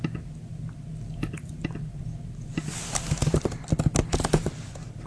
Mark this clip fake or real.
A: real